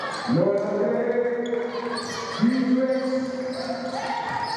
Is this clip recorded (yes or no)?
yes